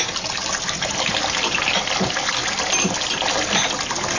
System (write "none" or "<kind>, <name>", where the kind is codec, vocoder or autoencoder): none